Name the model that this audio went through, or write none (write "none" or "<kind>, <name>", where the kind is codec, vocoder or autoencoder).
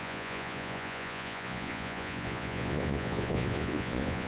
vocoder, Vocos